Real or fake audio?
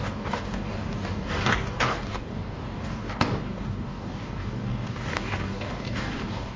fake